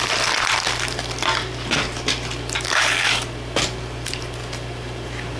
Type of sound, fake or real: real